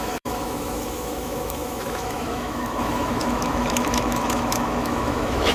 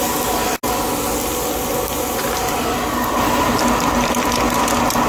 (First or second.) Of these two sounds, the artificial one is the first